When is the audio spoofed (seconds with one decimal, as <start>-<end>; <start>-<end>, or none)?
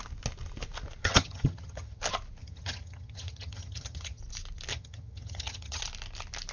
1.0-2.0; 2.4-4.2; 4.7-5.8